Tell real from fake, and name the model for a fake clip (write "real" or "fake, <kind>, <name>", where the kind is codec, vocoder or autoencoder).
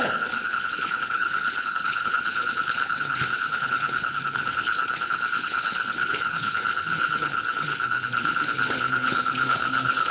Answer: fake, codec, HILCodec